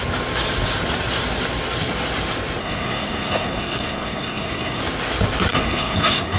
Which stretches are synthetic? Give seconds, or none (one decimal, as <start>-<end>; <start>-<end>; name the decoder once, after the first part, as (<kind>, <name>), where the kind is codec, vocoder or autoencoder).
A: 2.6-4.8 (codec, SNAC); 5.5-6.4